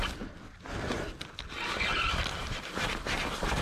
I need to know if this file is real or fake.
real